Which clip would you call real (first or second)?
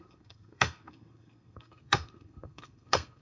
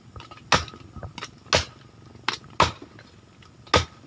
second